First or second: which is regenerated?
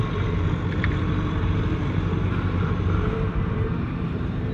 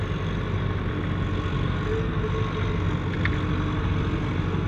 first